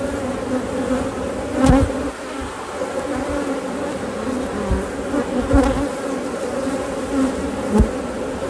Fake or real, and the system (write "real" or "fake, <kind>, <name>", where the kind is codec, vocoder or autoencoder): real